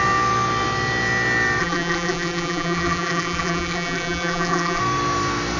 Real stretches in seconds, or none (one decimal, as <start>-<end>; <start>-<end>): 0.0-1.6; 4.8-5.6